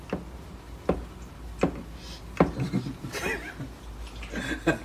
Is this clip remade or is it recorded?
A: recorded